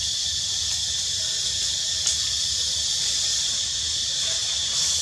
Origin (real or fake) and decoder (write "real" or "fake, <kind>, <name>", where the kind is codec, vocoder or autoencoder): real